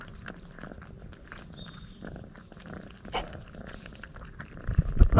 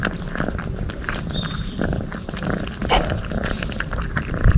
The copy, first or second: second